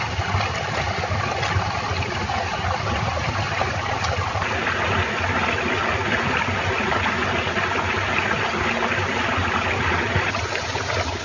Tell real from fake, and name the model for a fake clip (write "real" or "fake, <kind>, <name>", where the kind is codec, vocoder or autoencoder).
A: real